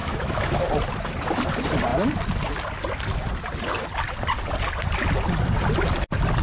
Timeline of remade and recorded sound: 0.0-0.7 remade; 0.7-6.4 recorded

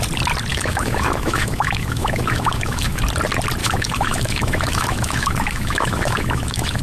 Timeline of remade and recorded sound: 0.0-0.5 recorded; 0.5-3.0 remade; 3.0-3.6 recorded; 3.6-6.8 remade

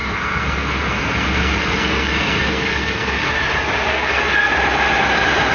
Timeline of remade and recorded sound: 0.0-3.3 remade; 3.3-3.9 recorded; 3.9-4.5 remade; 4.5-5.5 recorded

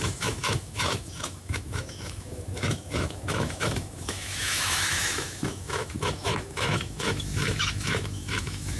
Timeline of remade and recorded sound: 0.0-8.8 remade

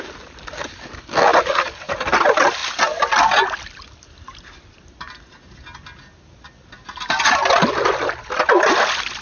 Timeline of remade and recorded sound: 0.0-9.2 recorded

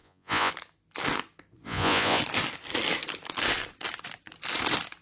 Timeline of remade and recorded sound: 0.0-0.5 remade; 0.5-1.6 recorded; 1.6-2.2 remade; 2.2-5.0 recorded

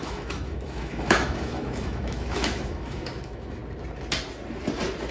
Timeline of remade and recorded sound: 0.0-3.6 remade; 3.6-5.1 recorded